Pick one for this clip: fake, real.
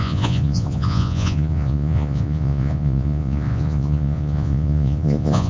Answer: fake